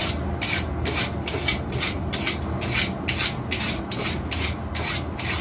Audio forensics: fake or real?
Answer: real